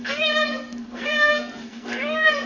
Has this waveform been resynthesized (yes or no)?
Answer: yes